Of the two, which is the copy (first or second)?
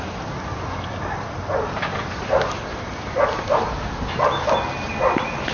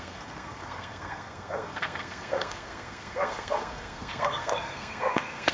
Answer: second